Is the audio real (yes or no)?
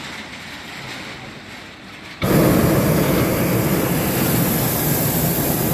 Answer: yes